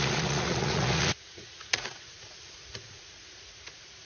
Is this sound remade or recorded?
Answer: remade